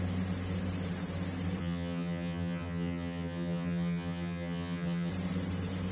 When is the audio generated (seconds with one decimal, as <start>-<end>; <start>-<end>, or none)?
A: 1.6-5.1